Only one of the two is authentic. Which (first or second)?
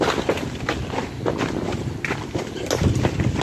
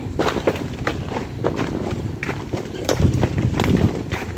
first